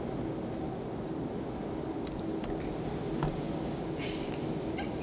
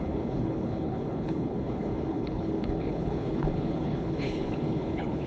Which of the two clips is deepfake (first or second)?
second